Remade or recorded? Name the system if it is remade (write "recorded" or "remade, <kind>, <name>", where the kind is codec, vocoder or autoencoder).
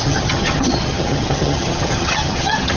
remade, vocoder, HiFi-GAN